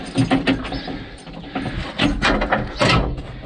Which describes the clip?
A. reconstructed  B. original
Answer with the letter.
B